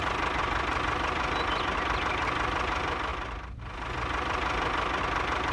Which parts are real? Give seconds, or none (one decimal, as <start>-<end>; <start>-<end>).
0.0-5.5